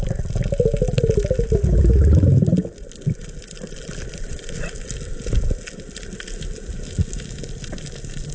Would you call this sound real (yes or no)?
yes